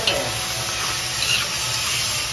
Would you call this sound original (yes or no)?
yes